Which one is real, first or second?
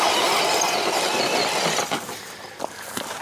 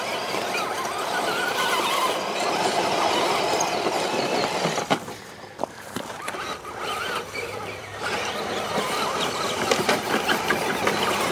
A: first